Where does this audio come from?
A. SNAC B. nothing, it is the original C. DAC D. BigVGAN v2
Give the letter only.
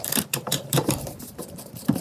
D